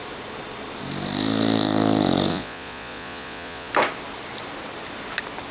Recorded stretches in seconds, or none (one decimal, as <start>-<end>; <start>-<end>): 0.0-2.3; 3.7-5.5